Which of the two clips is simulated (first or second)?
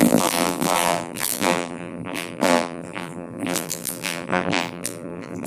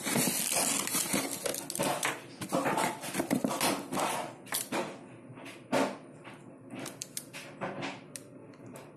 first